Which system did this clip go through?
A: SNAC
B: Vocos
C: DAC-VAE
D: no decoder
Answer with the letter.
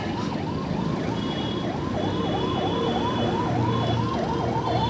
D